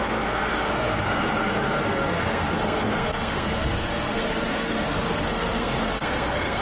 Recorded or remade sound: remade